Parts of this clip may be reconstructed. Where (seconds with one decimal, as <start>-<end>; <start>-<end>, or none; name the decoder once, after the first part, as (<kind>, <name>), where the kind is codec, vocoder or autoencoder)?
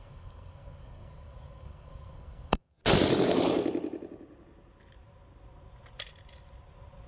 0.0-2.8 (codec, SNAC)